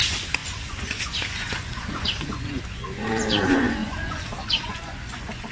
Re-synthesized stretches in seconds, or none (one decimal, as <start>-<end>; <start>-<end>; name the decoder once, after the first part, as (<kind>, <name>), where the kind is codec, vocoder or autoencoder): 0.0-5.5 (vocoder, Vocos)